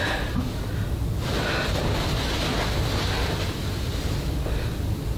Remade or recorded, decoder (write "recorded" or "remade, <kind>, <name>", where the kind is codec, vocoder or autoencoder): recorded